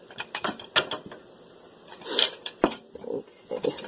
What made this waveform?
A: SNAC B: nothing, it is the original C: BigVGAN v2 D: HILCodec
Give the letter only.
B